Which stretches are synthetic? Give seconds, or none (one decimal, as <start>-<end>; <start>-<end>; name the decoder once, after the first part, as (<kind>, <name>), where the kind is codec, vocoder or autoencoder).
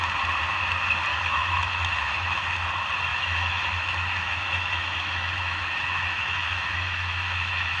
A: 1.1-2.4 (autoencoder, DAC-VAE); 3.1-7.8